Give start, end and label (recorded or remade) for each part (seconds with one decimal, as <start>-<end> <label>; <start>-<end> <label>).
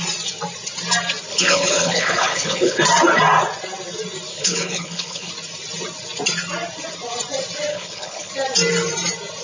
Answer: 0.0-1.3 recorded; 1.3-2.8 remade; 2.8-4.3 recorded; 4.3-5.3 remade; 5.3-7.7 recorded; 7.7-8.3 remade; 8.3-9.4 recorded